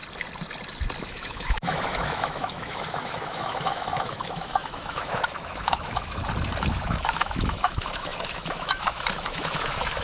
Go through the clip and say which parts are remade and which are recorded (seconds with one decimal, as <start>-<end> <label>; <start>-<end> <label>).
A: 0.0-1.1 recorded; 1.1-6.2 remade; 6.2-6.7 recorded; 6.7-10.0 remade